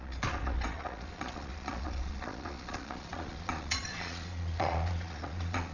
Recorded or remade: remade